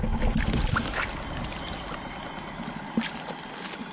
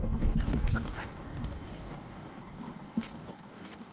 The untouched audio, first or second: first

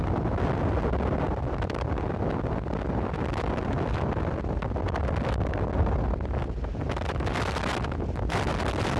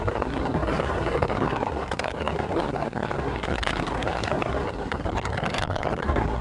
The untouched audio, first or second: first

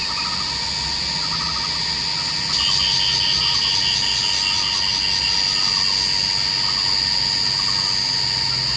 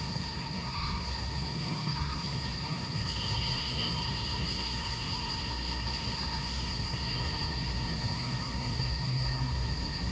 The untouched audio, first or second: first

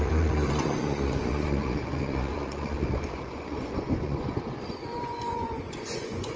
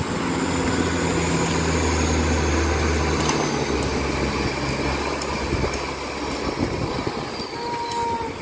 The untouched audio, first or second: second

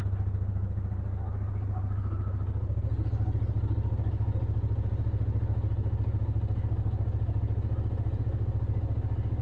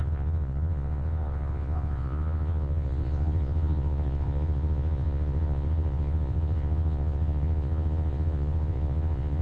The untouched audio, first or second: first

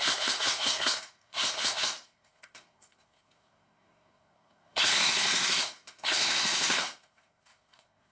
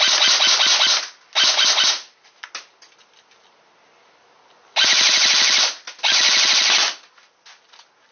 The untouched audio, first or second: second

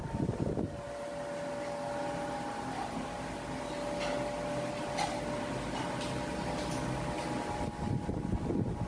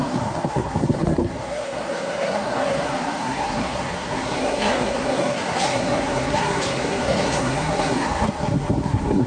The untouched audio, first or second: first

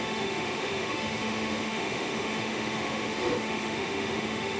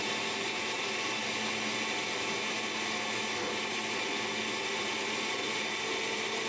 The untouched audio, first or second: second